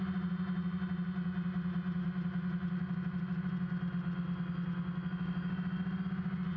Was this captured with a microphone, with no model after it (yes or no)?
yes